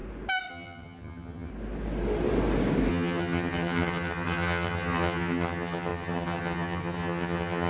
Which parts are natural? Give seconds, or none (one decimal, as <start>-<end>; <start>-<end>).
0.0-0.5; 1.5-2.9